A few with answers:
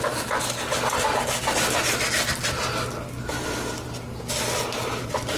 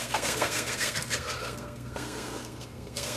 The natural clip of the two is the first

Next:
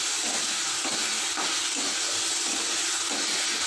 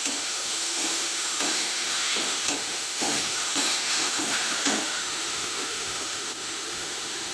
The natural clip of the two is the first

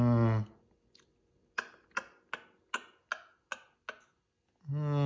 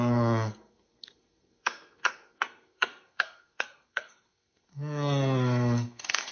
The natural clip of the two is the first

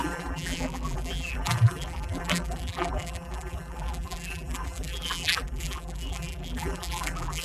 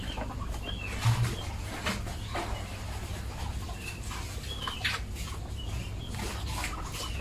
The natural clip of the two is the second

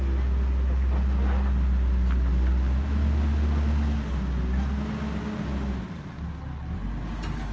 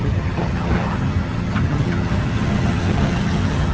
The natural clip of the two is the first